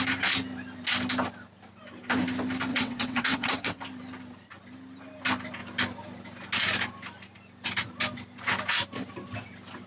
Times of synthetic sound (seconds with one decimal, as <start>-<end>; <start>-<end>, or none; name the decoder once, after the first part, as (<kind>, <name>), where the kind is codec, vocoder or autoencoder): 2.7-3.8 (vocoder, WaveNeXt)